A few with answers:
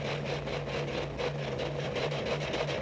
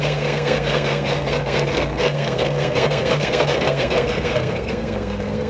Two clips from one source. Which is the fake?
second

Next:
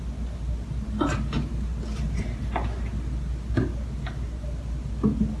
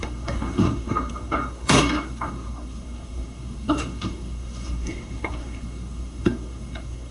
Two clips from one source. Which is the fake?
second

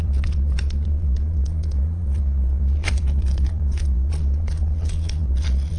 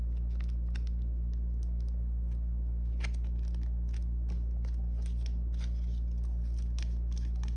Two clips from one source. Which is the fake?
first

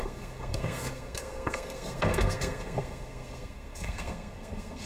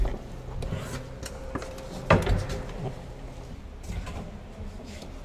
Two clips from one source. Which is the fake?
first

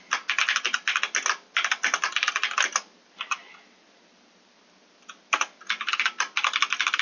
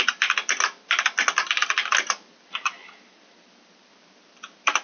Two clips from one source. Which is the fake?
second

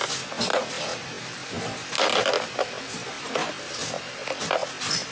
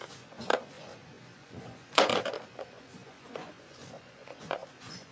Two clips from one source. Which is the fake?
second